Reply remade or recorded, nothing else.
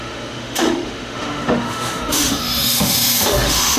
remade